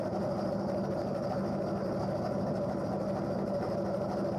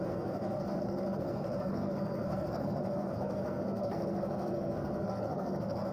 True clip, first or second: first